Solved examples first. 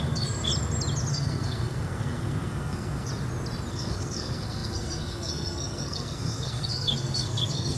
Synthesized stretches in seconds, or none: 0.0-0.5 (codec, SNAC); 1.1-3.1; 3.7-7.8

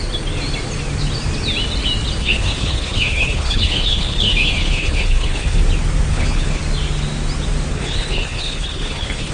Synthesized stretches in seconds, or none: 2.2-5.6 (codec, HILCodec); 6.1-6.6; 7.7-9.3

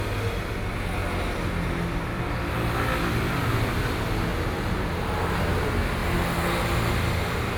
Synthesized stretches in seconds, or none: none

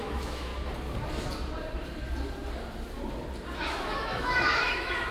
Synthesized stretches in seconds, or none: 0.0-0.5 (autoencoder, DAC-VAE); 3.6-5.1

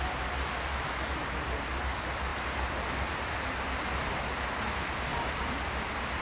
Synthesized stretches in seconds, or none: none